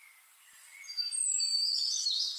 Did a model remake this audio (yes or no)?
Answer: no